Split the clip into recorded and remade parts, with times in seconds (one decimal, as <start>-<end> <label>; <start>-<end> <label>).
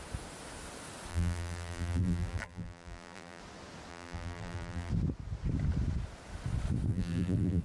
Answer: 0.0-1.1 recorded; 1.1-3.4 remade; 3.4-3.9 recorded; 3.9-4.9 remade; 4.9-6.9 recorded; 6.9-7.6 remade